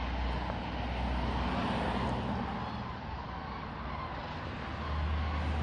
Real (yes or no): yes